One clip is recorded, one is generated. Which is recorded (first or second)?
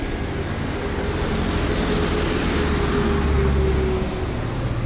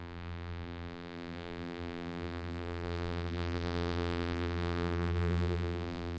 first